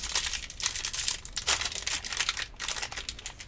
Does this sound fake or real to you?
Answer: real